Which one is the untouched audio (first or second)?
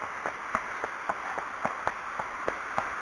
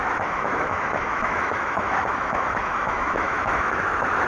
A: first